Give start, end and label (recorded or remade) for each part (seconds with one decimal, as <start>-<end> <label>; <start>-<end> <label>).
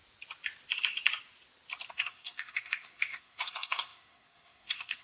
0.0-1.9 recorded; 1.9-5.0 remade